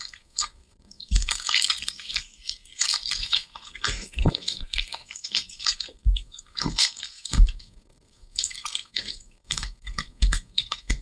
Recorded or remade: remade